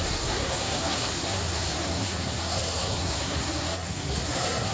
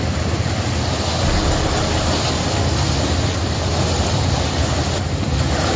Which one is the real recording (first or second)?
second